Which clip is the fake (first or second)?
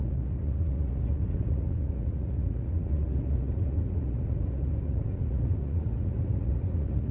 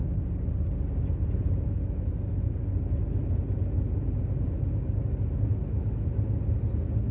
first